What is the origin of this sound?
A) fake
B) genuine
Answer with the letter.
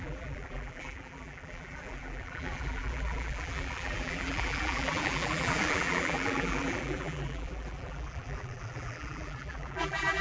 A